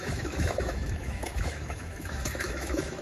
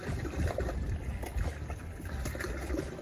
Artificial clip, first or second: first